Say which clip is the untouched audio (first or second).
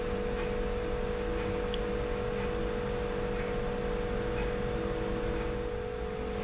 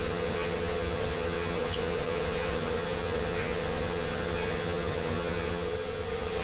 first